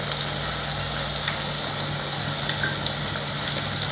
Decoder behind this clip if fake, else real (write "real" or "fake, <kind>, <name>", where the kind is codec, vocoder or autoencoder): real